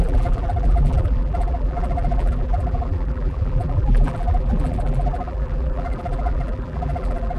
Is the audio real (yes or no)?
no